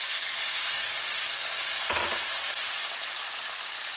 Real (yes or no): yes